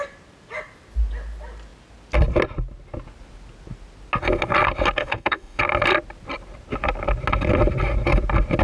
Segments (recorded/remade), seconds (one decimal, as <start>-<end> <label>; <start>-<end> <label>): 0.0-5.0 recorded; 5.0-5.6 remade; 5.6-8.6 recorded